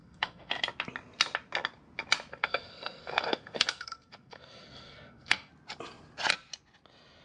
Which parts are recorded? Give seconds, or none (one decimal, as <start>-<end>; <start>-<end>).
0.5-2.4; 5.5-7.2